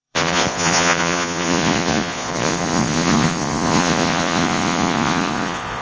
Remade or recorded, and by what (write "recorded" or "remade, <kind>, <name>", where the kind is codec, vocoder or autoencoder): remade, vocoder, Vocos